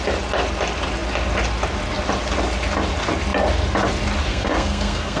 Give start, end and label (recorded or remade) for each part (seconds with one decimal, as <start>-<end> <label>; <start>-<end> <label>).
0.0-4.3 recorded; 4.3-5.2 remade